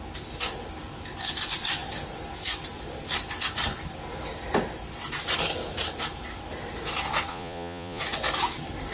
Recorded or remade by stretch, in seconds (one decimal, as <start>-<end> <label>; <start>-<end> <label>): 0.0-7.3 recorded; 7.3-8.0 remade; 8.0-8.9 recorded